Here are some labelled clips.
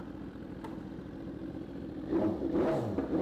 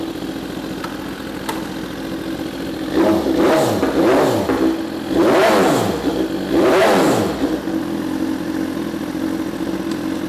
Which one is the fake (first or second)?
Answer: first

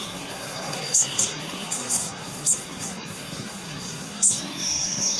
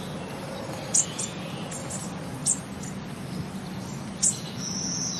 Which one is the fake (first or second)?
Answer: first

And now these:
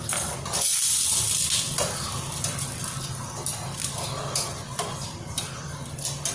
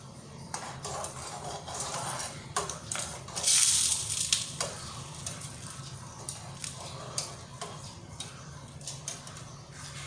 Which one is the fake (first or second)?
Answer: second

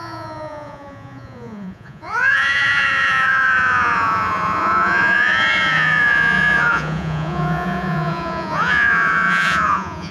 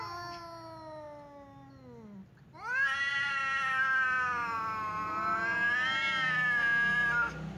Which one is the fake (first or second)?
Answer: first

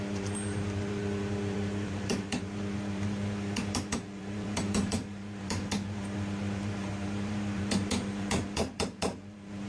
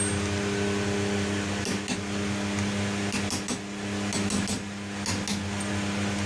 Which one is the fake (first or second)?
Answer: first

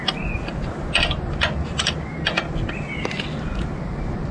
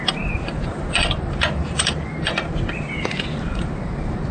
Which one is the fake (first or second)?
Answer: second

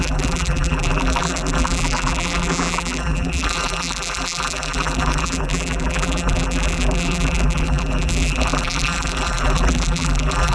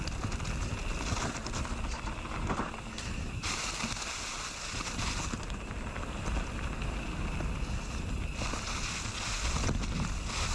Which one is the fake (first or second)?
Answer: first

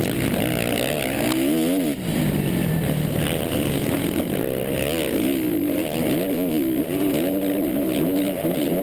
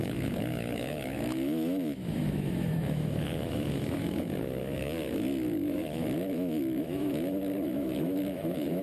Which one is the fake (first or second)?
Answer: second